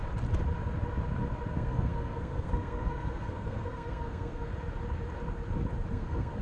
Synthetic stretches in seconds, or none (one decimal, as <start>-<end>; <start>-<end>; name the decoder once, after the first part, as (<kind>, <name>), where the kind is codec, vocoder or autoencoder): 1.5-4.5 (codec, SNAC); 5.9-6.4